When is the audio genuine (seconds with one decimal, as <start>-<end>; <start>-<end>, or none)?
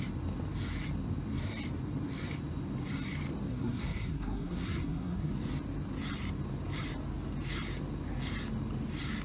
0.0-3.5; 5.3-9.2